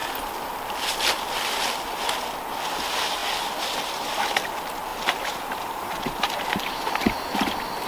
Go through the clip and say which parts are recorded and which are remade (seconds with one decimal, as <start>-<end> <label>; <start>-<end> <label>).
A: 0.0-4.9 recorded; 4.9-6.8 remade; 6.8-7.9 recorded